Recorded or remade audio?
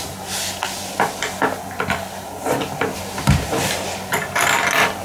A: recorded